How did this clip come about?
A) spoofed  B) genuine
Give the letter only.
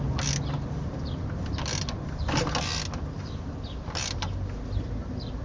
B